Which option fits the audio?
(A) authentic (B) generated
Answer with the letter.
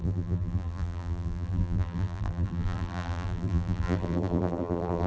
B